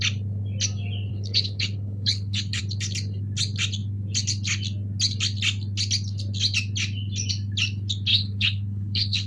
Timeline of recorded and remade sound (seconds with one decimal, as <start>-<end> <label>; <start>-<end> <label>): 0.0-1.1 recorded; 1.1-2.6 remade; 2.6-8.1 recorded; 8.1-9.3 remade